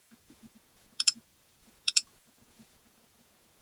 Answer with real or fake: fake